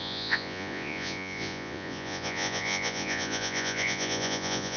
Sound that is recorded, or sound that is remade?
remade